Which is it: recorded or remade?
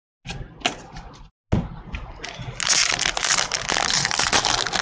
recorded